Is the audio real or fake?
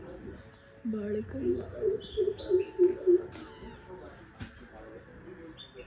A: real